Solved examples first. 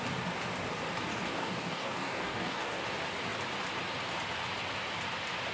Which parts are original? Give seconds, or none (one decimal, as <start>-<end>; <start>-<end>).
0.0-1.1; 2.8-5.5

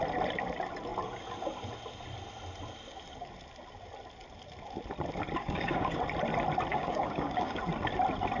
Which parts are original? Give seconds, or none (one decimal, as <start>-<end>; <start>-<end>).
0.0-5.4; 6.0-6.7; 7.6-8.4

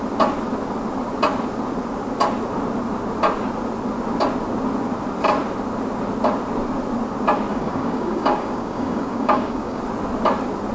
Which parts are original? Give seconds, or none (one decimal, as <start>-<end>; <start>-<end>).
0.0-7.5; 9.8-10.7

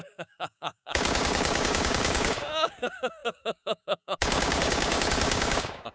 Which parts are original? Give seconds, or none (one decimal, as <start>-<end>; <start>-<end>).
none